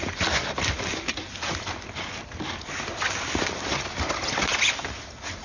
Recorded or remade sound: recorded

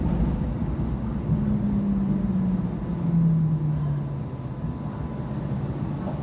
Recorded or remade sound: recorded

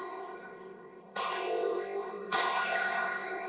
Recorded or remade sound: remade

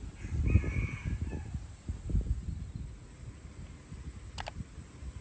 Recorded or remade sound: recorded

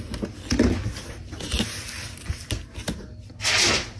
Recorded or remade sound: recorded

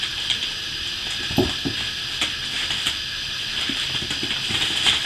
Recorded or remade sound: recorded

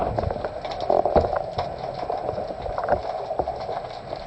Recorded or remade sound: recorded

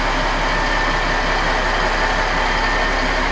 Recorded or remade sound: recorded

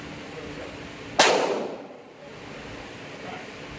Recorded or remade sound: recorded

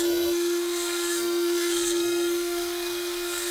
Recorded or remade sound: remade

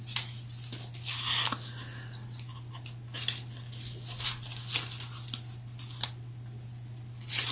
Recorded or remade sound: recorded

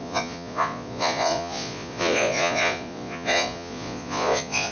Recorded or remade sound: remade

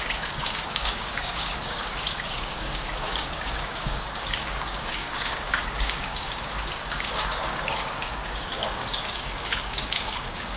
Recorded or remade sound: remade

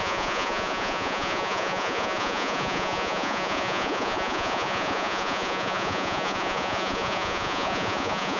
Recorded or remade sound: remade